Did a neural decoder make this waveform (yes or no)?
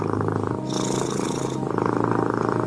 no